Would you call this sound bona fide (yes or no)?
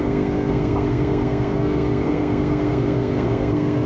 no